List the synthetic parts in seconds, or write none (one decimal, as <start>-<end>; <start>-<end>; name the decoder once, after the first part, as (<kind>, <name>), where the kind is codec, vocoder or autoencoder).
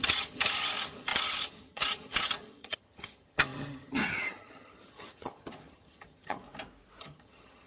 0.0-6.4 (vocoder, HiFi-GAN); 7.0-7.7